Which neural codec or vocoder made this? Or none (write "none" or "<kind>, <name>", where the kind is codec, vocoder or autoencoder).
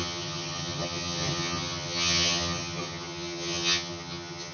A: vocoder, HiFi-GAN